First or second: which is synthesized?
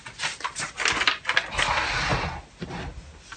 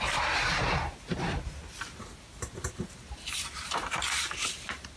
second